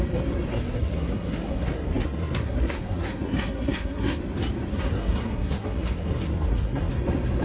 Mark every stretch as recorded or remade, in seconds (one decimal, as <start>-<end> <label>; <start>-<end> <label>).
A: 0.0-0.5 recorded; 0.5-4.2 remade; 4.2-4.7 recorded; 4.7-6.9 remade; 6.9-7.4 recorded